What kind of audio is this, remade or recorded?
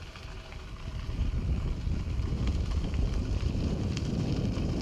remade